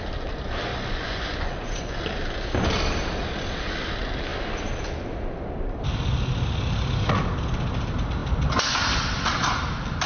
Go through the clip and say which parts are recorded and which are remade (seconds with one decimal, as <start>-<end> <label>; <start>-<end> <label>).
0.0-0.7 recorded; 0.7-2.0 remade; 2.0-10.1 recorded